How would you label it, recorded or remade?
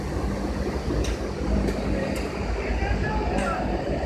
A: recorded